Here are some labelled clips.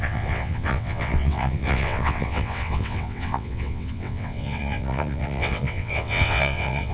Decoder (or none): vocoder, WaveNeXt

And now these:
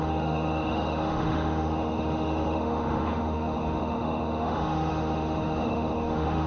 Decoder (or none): autoencoder, DAC-VAE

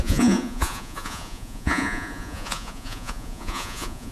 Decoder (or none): vocoder, Vocos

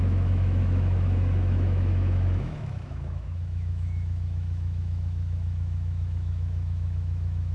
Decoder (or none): autoencoder, DAC-VAE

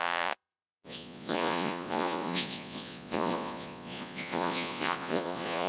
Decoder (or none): vocoder, Vocos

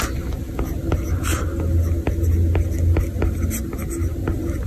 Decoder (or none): none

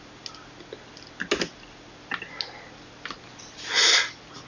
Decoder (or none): none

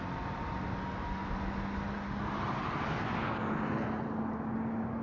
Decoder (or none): none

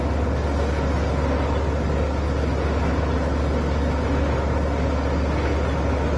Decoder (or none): none